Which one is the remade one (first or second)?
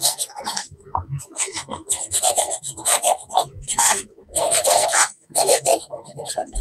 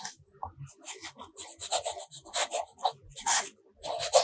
first